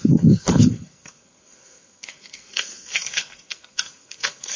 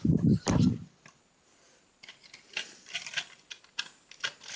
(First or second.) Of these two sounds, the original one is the second